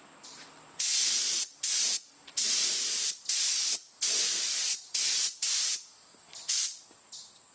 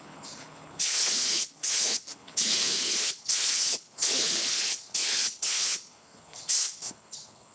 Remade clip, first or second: second